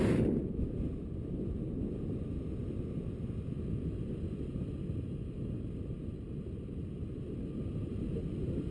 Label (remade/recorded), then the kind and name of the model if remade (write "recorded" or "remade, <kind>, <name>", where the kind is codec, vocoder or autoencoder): recorded